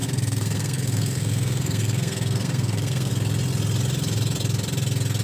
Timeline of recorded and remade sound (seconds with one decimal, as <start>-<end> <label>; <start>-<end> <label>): 0.0-3.1 remade; 3.1-5.2 recorded